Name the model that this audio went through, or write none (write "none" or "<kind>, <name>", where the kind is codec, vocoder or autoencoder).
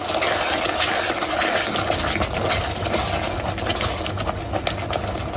none